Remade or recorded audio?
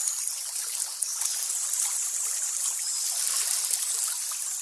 recorded